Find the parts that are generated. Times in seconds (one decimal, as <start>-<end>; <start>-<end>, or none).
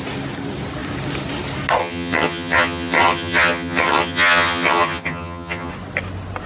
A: 1.8-5.7